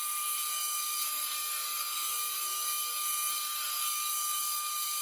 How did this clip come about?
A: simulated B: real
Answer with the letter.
A